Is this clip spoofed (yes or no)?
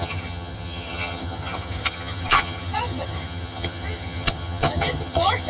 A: yes